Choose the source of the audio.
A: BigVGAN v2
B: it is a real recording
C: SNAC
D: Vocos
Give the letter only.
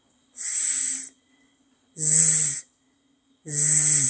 B